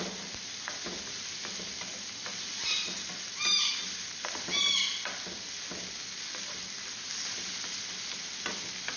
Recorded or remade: recorded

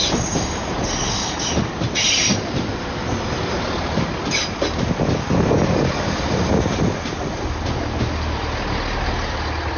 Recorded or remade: recorded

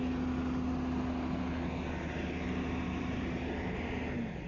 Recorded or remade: recorded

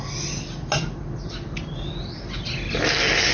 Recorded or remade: recorded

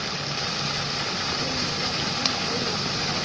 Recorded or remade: recorded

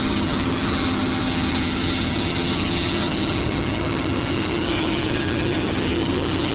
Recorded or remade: remade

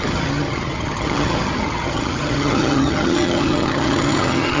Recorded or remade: remade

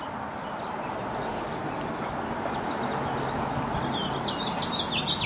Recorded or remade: recorded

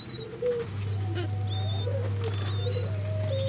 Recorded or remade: recorded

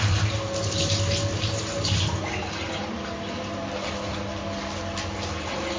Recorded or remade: recorded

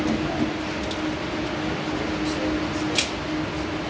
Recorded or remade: recorded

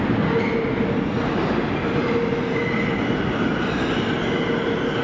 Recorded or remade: recorded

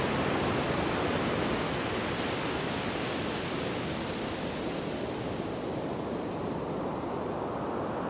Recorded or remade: recorded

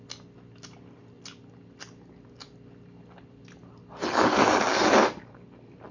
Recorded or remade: recorded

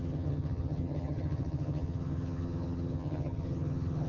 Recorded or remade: remade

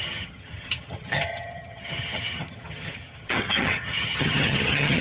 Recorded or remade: remade